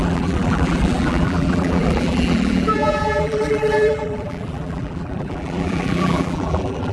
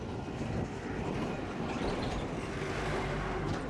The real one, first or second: second